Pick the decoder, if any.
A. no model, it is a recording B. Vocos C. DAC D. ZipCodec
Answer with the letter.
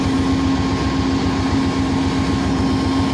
A